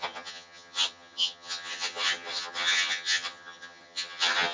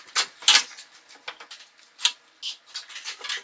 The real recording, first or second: second